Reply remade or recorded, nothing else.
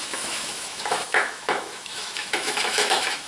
remade